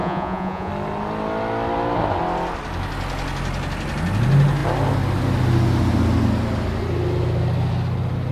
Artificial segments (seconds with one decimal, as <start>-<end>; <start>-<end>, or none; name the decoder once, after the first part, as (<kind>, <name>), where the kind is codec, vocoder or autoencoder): 0.0-0.7 (vocoder, Vocos)

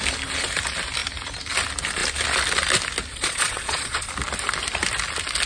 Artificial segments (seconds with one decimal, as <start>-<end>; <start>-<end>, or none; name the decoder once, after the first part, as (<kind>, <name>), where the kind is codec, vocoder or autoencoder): 3.1-4.1 (vocoder, Vocos)

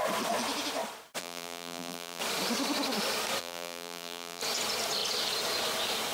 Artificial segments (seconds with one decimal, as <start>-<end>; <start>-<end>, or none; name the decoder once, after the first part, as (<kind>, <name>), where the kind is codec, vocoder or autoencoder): 1.2-2.2 (vocoder, BigVGAN v2); 3.4-4.4